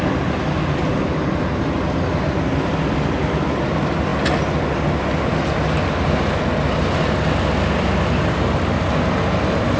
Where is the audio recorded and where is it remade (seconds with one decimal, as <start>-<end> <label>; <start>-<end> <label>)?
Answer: 0.0-9.8 recorded